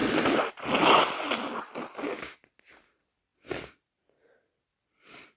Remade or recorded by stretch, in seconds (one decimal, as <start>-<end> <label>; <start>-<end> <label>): 0.0-5.4 recorded